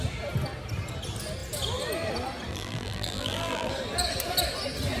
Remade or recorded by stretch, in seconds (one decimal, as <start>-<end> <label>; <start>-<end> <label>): 0.0-2.5 recorded; 2.5-3.7 remade; 3.7-5.0 recorded